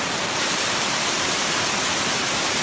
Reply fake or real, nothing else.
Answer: real